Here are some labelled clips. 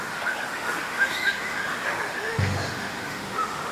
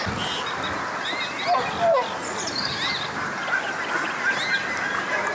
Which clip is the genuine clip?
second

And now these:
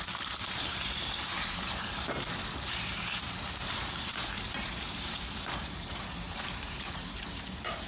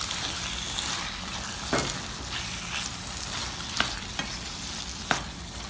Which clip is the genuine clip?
second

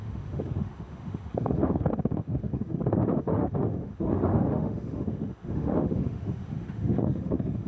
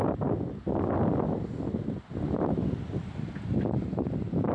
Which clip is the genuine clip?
second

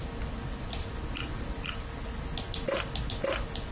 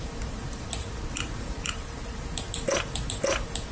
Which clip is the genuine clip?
first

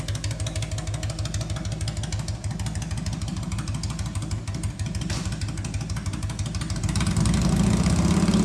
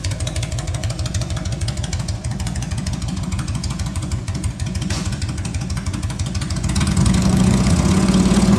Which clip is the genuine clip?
first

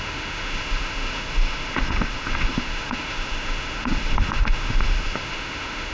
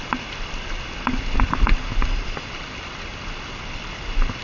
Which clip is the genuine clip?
second